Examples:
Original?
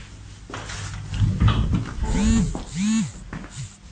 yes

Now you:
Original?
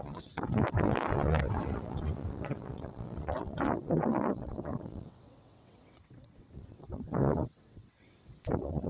no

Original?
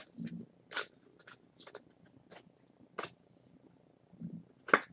yes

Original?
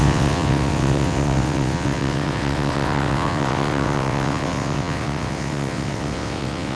no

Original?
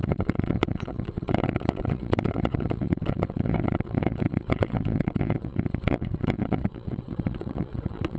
no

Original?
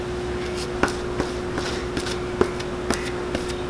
yes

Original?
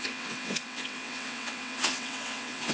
no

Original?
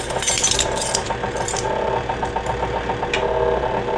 yes